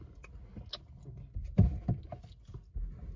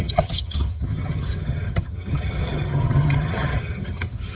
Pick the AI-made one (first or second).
second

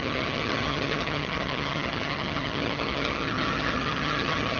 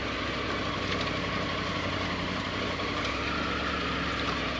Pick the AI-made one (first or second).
first